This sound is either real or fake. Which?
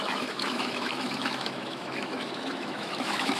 fake